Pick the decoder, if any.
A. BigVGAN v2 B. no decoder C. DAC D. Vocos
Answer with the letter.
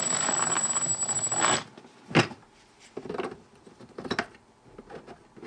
B